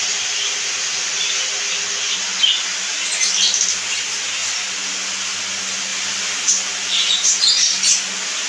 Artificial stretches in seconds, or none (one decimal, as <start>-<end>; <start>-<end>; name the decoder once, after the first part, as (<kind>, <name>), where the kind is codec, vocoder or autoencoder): none